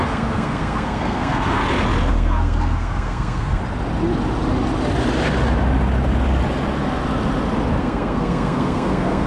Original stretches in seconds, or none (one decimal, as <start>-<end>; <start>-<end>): 1.6-2.1; 3.6-7.8